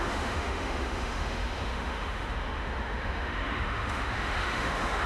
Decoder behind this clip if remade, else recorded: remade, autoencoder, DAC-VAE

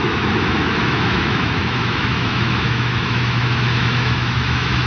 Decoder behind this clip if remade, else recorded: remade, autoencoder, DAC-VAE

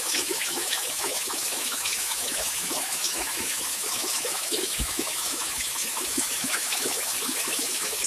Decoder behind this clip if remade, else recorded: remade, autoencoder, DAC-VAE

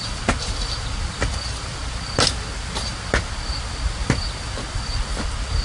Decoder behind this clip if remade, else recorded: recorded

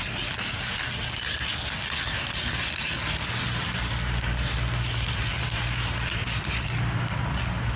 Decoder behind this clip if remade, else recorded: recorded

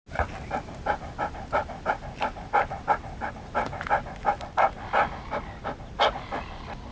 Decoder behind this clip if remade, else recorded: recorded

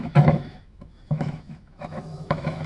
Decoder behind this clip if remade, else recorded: remade, autoencoder, DAC-VAE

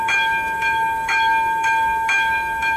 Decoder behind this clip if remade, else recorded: remade, autoencoder, DAC-VAE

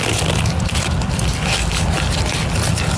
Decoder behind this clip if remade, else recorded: recorded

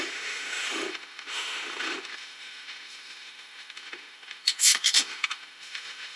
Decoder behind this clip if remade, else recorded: remade, autoencoder, DAC-VAE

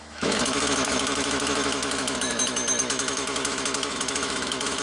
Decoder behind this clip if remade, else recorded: remade, autoencoder, DAC-VAE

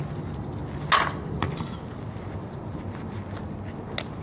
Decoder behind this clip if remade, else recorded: recorded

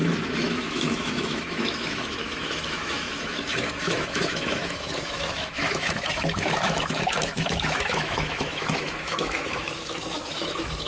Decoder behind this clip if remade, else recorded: remade, autoencoder, DAC-VAE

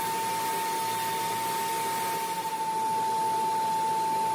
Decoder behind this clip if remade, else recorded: recorded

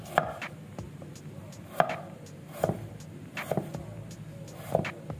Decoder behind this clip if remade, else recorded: recorded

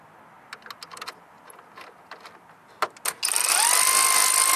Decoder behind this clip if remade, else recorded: recorded